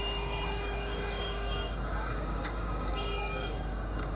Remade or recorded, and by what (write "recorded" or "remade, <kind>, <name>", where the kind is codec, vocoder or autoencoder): remade, codec, DAC